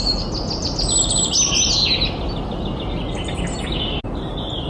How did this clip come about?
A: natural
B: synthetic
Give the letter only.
A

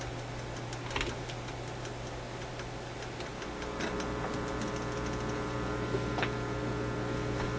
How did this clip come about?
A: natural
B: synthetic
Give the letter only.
A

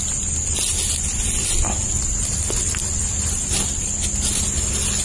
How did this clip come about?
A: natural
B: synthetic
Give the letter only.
A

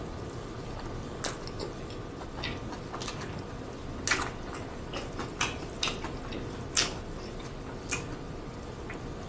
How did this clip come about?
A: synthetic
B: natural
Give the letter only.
B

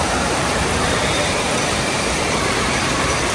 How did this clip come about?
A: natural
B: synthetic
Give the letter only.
B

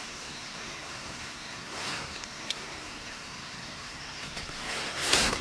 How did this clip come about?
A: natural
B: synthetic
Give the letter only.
B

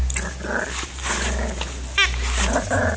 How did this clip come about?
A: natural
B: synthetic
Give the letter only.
A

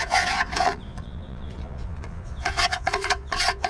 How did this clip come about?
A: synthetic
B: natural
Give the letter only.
A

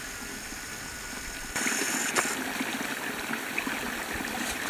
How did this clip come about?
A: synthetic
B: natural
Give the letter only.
B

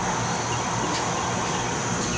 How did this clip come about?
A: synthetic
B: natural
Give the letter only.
B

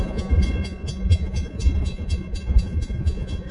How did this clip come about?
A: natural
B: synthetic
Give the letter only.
B